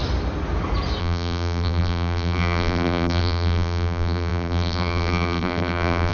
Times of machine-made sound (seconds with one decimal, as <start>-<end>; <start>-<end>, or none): 1.0-6.1